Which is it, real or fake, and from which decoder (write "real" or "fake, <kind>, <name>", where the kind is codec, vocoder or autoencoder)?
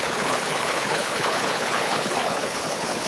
fake, codec, HILCodec